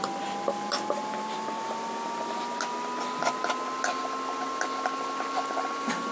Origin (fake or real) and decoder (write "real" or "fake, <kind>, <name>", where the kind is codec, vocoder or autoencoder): real